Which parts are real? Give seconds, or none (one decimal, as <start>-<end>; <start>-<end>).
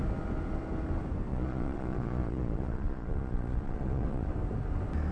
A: 0.0-1.3; 4.3-5.1